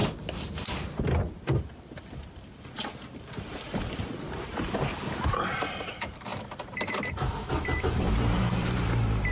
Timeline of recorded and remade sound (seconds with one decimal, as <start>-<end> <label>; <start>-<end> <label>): 0.0-4.0 recorded; 4.0-9.3 remade